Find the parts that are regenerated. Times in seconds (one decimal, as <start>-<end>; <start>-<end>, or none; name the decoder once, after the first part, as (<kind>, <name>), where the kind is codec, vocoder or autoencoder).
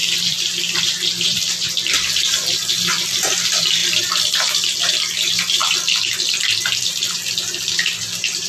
0.0-1.7 (vocoder, BigVGAN v2); 2.7-3.8; 4.8-5.6; 6.4-8.5